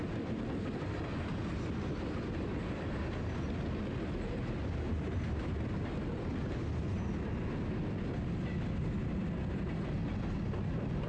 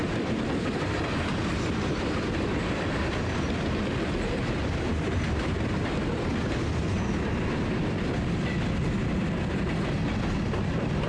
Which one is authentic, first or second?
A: first